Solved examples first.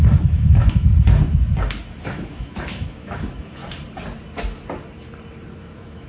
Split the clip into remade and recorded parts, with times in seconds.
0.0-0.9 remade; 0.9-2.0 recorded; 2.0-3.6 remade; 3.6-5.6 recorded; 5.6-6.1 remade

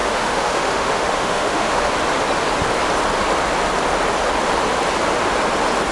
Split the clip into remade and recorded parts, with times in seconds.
0.0-1.9 remade; 1.9-5.9 recorded

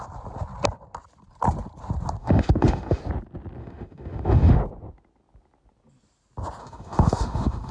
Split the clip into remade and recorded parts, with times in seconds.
0.0-2.2 recorded; 2.2-3.0 remade; 3.0-3.6 recorded; 3.6-4.6 remade; 4.6-6.6 recorded; 6.6-7.7 remade